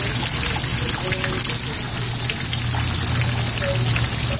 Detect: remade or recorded recorded